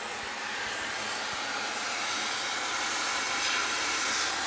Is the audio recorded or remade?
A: recorded